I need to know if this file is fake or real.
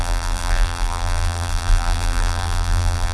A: fake